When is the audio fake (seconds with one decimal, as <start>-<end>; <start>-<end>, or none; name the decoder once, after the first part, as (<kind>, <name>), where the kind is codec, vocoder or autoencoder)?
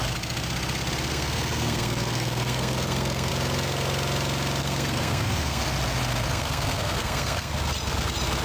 1.1-3.3 (codec, SNAC); 4.6-5.6; 6.3-7.5